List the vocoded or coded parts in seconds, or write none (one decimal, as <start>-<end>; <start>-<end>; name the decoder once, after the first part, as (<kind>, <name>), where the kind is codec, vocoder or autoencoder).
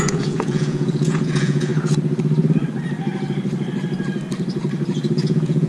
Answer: 0.0-1.7 (vocoder, Vocos); 5.1-5.7